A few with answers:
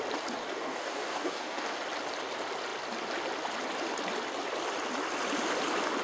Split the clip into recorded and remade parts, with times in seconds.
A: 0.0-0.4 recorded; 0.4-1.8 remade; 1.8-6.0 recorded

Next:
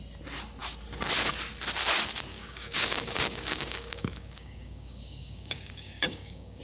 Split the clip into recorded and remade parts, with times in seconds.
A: 0.0-2.3 recorded; 2.3-6.6 remade

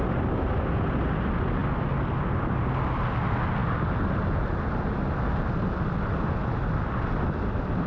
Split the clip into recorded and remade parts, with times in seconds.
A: 0.0-7.9 recorded

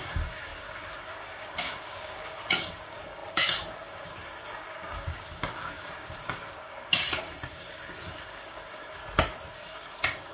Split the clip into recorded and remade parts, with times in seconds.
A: 0.0-9.0 remade; 9.0-9.5 recorded; 9.5-10.3 remade

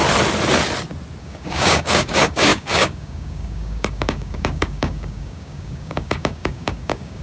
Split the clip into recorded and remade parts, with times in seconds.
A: 0.0-1.2 recorded; 1.2-7.2 remade

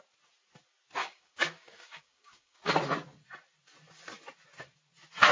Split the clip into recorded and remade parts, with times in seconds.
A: 0.0-1.0 recorded; 1.0-2.7 remade; 2.7-5.3 recorded

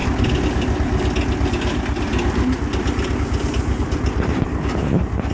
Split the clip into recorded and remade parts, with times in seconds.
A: 0.0-5.3 recorded